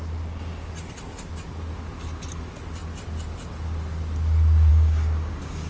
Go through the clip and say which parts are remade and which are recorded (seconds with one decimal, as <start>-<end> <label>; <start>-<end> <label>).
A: 0.0-4.7 recorded; 4.7-5.7 remade